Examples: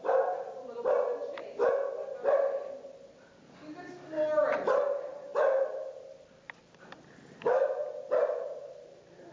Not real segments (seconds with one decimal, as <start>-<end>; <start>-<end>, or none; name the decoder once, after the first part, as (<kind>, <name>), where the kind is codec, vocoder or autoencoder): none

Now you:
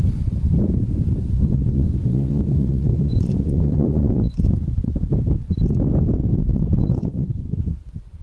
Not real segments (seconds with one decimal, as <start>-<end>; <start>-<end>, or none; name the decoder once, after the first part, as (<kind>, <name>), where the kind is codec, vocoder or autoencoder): 1.2-4.9 (vocoder, Vocos); 6.4-8.2

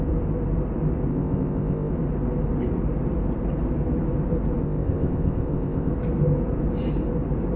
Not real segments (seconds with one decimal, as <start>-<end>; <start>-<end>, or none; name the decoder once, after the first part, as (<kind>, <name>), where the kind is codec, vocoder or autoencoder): 1.1-1.9 (codec, ZipCodec); 4.6-5.9

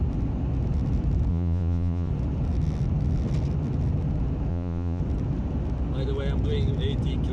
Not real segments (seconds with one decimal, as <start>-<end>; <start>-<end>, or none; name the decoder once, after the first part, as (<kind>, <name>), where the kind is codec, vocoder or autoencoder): 1.3-2.1 (vocoder, Vocos); 4.5-5.0

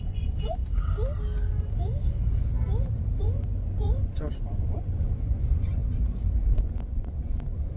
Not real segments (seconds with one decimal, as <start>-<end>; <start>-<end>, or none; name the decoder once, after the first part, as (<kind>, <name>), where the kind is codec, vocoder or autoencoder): 0.0-0.6 (vocoder, Vocos); 1.6-2.0; 3.2-5.8; 6.5-7.8